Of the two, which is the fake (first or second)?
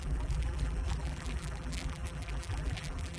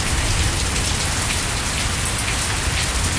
first